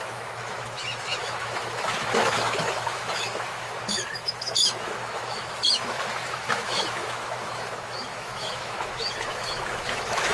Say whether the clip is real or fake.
fake